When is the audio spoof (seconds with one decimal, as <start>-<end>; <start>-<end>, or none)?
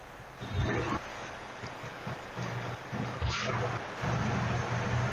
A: 1.1-3.5